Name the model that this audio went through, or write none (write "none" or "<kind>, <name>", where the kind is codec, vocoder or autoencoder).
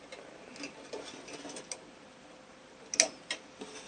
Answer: none